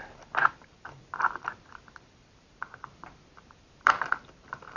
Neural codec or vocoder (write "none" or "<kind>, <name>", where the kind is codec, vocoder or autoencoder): vocoder, BigVGAN v2